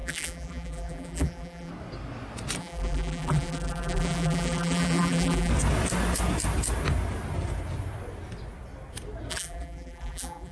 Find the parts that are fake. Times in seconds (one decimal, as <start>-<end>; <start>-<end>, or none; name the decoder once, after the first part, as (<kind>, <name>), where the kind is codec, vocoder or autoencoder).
0.0-1.7 (vocoder, BigVGAN v2); 2.6-5.5; 9.3-10.5